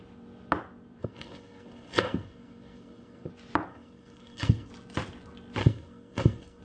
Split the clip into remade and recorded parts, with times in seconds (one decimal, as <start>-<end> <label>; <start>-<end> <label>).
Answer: 0.0-1.0 recorded; 1.0-3.3 remade; 3.3-3.7 recorded; 3.7-4.7 remade; 4.7-5.6 recorded; 5.6-6.6 remade